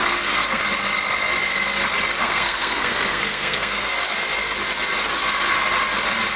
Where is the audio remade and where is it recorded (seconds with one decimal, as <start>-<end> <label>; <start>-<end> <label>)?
0.0-0.6 remade; 0.6-2.2 recorded; 2.2-3.9 remade; 3.9-6.4 recorded